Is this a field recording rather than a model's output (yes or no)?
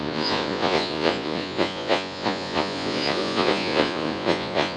no